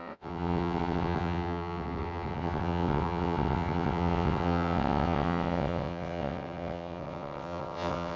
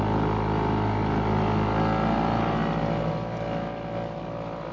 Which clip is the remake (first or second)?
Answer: first